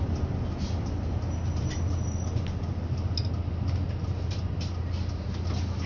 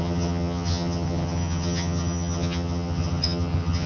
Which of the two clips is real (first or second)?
first